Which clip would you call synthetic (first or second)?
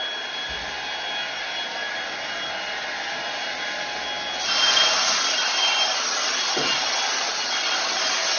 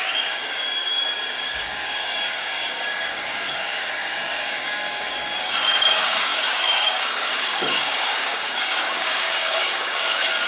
second